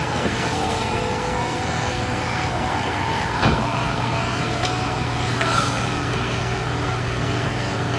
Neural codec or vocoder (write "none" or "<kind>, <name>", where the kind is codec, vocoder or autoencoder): codec, SNAC